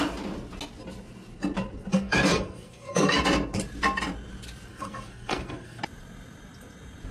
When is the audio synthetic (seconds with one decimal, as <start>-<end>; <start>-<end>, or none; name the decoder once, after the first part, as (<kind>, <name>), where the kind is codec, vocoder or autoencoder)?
1.9-3.2 (codec, SNAC); 4.7-5.8